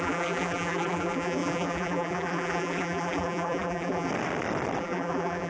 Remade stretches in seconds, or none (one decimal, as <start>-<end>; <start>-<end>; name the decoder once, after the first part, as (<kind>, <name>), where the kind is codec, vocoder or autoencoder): 0.0-4.1 (vocoder, BigVGAN v2); 4.8-5.5